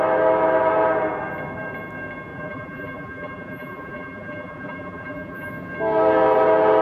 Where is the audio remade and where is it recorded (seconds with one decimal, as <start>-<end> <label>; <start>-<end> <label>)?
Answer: 0.0-2.3 recorded; 2.3-5.5 remade; 5.5-6.8 recorded